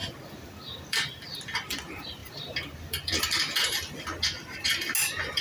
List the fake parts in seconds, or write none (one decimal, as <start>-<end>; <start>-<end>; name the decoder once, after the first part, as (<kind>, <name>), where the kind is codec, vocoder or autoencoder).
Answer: 0.0-1.4 (vocoder, BigVGAN v2); 2.2-3.2